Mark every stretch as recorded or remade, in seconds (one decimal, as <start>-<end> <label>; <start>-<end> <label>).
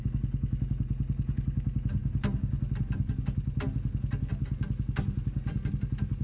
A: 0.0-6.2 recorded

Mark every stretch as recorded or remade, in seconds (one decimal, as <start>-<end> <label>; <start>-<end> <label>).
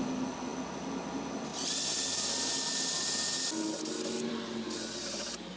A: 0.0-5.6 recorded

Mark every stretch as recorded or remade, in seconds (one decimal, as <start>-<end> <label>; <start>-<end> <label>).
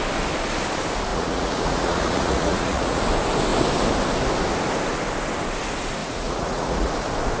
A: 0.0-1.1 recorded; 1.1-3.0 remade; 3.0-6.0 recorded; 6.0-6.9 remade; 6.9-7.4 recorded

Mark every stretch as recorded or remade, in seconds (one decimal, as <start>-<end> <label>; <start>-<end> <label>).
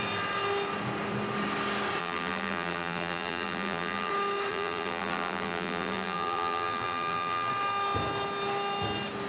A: 0.0-2.0 recorded; 2.0-4.1 remade; 4.1-4.5 recorded; 4.5-7.5 remade; 7.5-9.3 recorded